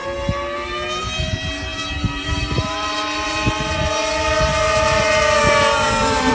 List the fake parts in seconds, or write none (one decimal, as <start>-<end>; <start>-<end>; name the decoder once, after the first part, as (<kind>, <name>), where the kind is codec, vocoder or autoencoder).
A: 1.0-6.3 (vocoder, BigVGAN v2)